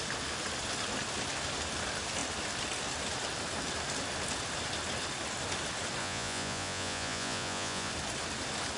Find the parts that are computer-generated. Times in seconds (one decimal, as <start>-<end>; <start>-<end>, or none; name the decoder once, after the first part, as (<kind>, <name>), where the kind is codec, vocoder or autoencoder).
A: 6.0-7.9 (vocoder, Vocos)